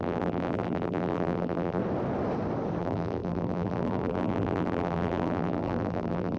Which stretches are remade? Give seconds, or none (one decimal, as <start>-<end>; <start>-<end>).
0.0-1.8; 2.8-6.4